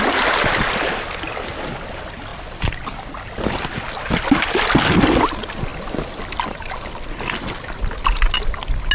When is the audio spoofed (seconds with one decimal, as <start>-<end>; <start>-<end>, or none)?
none